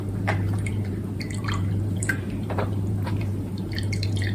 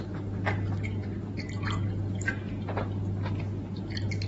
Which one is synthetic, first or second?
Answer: first